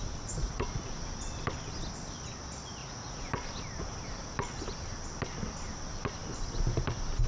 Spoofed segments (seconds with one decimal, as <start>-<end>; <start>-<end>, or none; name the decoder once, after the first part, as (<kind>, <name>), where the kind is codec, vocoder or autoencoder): 0.0-0.9 (vocoder, Vocos); 2.8-3.3